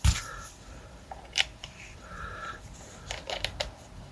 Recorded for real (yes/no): no